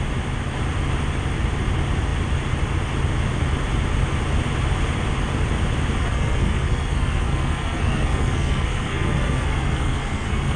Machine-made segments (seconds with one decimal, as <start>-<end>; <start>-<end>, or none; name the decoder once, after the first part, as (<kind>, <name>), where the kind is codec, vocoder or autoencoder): 6.0-10.6 (codec, SNAC)

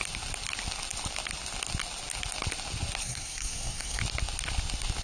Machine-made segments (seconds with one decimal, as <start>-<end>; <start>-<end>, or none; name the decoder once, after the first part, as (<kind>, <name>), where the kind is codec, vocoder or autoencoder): 3.0-4.0 (codec, SNAC)